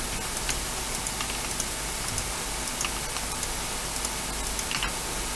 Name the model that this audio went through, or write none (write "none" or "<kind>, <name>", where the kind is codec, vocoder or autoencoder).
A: none